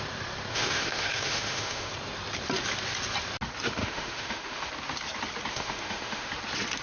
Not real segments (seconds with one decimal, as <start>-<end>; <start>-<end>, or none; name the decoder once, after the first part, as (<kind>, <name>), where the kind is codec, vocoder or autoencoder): 0.5-1.9 (autoencoder, DAC-VAE); 3.8-4.7; 5.5-6.3